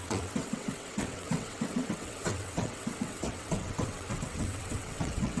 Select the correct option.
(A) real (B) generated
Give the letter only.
B